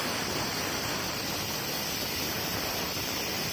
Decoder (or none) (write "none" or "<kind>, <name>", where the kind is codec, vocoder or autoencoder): vocoder, BigVGAN v2